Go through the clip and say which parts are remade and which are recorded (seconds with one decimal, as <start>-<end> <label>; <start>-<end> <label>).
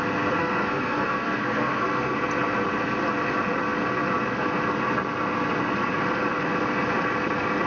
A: 0.0-0.4 recorded; 0.4-2.1 remade; 2.1-7.7 recorded